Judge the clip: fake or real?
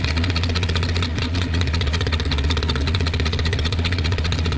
fake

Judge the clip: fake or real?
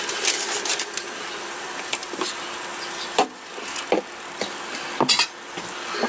real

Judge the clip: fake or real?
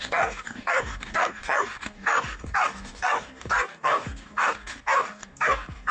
fake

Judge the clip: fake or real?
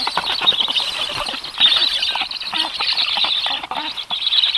real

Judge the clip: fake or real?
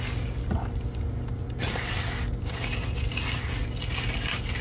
real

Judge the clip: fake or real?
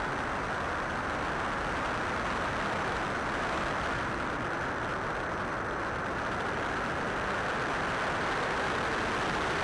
real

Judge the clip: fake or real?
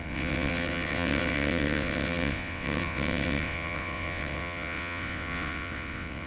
fake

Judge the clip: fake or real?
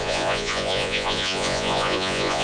fake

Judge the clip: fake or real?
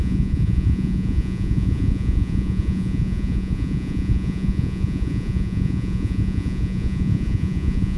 fake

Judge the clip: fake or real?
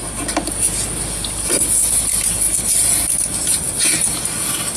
real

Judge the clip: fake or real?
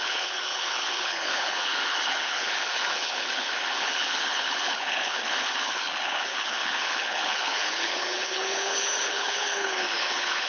fake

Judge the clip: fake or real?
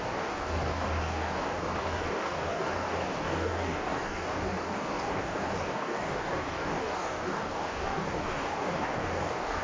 fake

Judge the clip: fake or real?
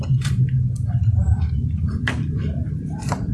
fake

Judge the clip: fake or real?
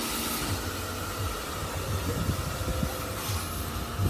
real